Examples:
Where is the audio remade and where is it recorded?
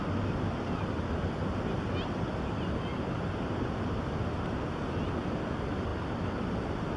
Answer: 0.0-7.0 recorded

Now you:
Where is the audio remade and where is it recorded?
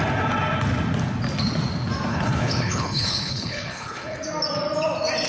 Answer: 0.0-2.1 recorded; 2.1-4.2 remade; 4.2-5.3 recorded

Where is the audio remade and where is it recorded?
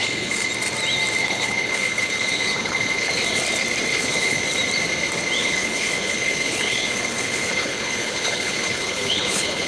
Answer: 0.0-0.5 remade; 0.5-1.2 recorded; 1.2-3.1 remade; 3.1-3.9 recorded; 3.9-4.4 remade; 4.4-5.4 recorded; 5.4-9.7 remade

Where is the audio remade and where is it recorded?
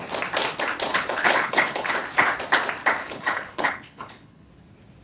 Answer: 0.0-0.9 recorded; 0.9-1.9 remade; 1.9-3.0 recorded; 3.0-4.5 remade; 4.5-5.0 recorded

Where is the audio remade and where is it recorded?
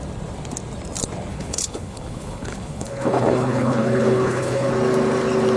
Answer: 0.0-1.3 recorded; 1.3-4.7 remade; 4.7-5.6 recorded